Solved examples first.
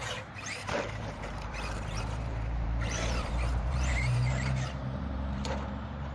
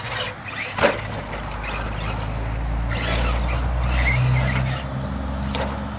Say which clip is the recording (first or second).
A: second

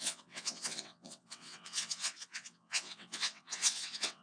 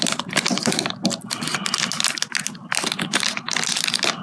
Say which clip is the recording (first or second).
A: second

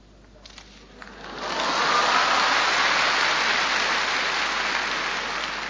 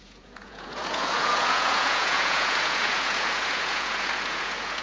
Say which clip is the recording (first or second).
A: first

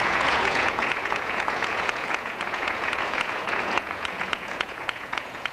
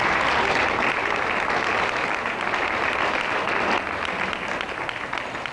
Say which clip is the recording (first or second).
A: second